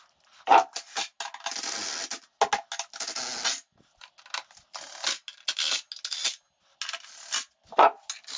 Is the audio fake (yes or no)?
no